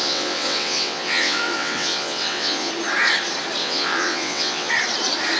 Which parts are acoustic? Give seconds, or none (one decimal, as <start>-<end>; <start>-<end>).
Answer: 2.7-3.6; 4.7-5.4